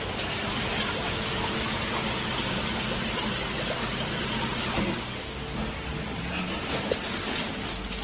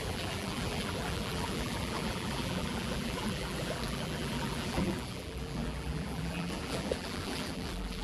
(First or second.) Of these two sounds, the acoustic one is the first